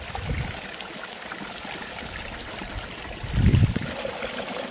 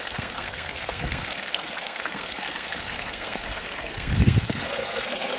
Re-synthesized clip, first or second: second